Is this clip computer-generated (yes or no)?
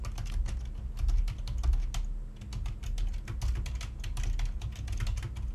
no